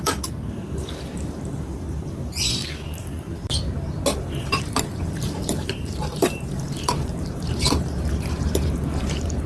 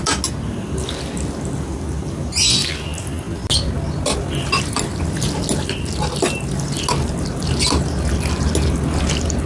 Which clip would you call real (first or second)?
second